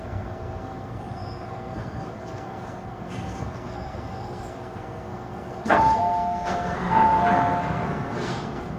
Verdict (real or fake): fake